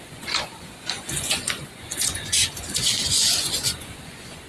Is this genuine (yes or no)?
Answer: no